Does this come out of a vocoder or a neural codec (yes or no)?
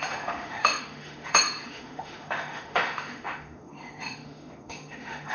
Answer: yes